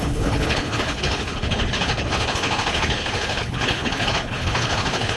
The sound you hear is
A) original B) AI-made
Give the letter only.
B